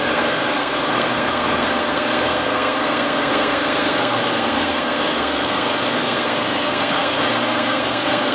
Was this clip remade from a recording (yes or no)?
yes